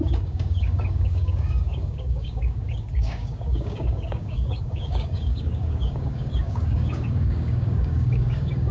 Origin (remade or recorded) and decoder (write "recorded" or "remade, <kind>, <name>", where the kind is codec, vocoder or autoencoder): remade, codec, DAC